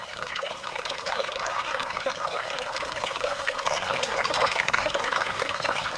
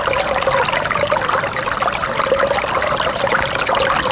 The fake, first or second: first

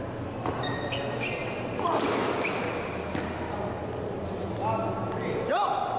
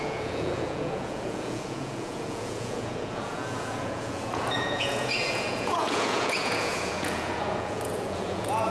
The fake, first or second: second